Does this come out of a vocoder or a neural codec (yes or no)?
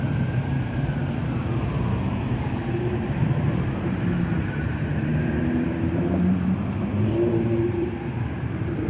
yes